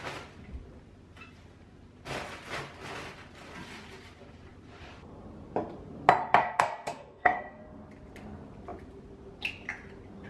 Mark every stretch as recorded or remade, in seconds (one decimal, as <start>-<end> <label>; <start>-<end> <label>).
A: 0.0-6.4 recorded; 6.4-7.6 remade; 7.6-10.3 recorded